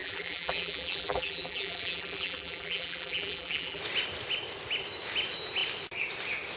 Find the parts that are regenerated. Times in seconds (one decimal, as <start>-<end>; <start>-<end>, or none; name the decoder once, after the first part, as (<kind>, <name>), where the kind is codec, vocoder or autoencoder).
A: 0.0-3.8 (vocoder, BigVGAN v2)